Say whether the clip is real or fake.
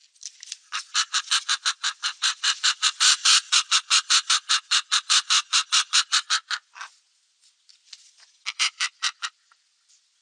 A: real